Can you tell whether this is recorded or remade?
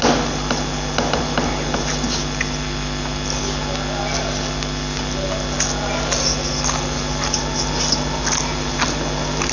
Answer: recorded